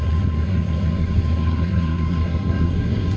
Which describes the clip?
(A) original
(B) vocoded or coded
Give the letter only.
B